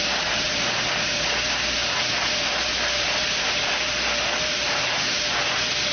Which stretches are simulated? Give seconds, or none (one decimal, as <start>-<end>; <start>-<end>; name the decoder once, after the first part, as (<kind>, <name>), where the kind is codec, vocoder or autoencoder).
none